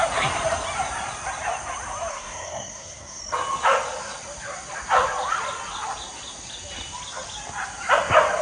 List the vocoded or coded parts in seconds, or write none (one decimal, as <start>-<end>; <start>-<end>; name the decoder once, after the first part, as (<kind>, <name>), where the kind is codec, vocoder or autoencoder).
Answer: 2.1-3.2 (codec, SNAC)